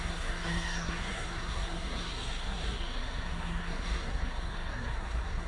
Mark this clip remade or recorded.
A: remade